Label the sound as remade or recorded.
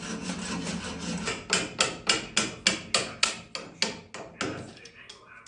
recorded